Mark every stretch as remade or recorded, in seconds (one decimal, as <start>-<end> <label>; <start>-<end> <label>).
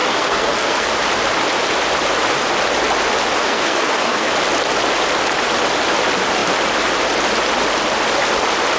0.0-0.9 remade; 0.9-3.4 recorded; 3.4-4.3 remade; 4.3-8.8 recorded